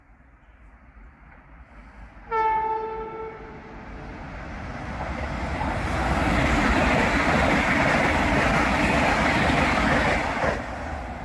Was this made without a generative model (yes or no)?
yes